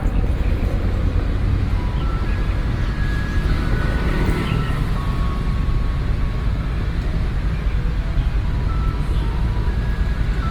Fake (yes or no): no